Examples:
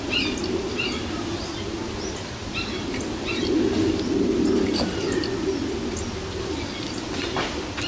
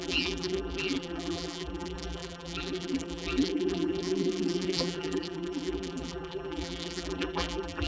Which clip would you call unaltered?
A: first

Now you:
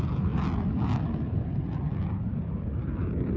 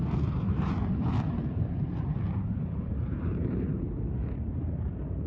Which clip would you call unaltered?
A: first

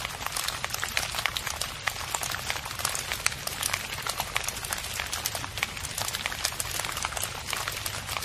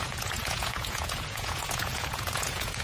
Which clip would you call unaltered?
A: first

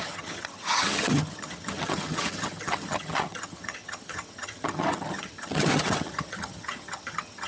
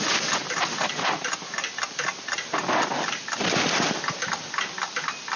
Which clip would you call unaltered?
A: second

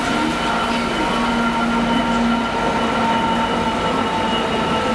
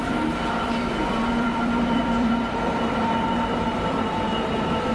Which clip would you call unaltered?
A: first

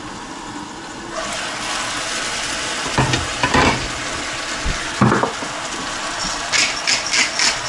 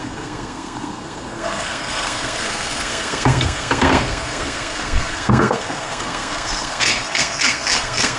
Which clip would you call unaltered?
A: first